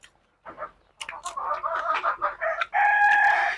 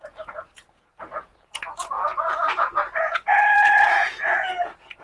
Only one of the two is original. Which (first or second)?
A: first